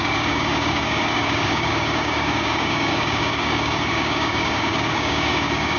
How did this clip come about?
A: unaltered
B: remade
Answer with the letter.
B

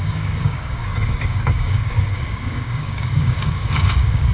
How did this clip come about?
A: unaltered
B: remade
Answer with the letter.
B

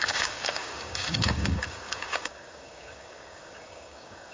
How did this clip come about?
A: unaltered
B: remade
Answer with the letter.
B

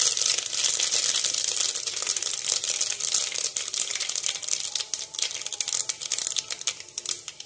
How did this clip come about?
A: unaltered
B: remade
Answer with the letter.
A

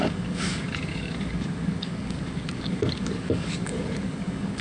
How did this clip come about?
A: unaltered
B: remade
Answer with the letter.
B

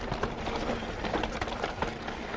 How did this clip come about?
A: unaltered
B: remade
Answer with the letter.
A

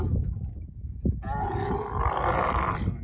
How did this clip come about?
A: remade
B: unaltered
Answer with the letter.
B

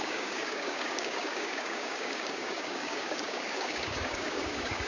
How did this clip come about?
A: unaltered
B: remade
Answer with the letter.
B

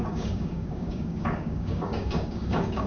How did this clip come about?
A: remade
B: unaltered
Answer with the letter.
A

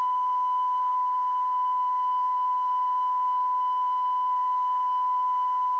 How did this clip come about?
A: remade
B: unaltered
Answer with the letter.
A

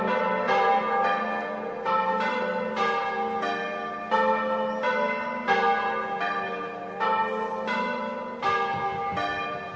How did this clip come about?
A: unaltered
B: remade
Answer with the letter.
A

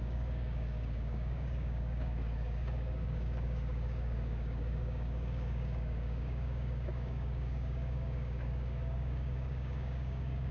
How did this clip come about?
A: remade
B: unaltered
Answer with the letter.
A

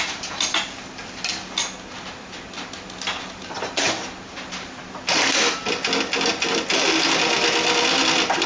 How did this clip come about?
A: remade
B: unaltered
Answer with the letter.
B